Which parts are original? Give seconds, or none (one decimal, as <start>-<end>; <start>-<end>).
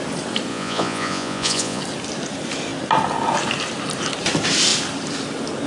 0.0-0.5; 1.8-5.7